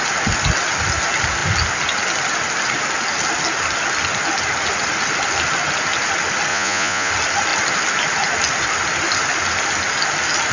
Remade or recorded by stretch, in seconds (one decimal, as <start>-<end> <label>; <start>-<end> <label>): 0.0-6.5 recorded; 6.5-7.1 remade; 7.1-10.5 recorded